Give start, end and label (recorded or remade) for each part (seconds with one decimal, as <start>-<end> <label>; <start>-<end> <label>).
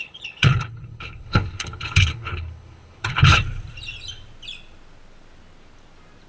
0.0-3.3 remade; 3.3-6.3 recorded